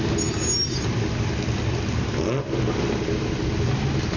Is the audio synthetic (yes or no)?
no